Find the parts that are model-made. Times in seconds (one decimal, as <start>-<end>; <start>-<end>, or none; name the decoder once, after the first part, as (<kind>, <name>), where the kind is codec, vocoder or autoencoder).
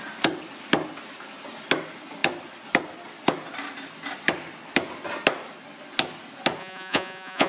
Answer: 6.6-7.5 (vocoder, Vocos)